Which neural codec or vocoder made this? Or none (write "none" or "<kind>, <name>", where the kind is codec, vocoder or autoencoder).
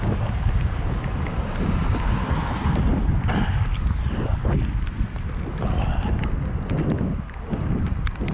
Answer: none